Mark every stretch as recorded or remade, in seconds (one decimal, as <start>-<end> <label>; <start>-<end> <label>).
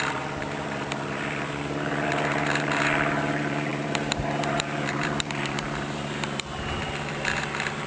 0.0-7.9 remade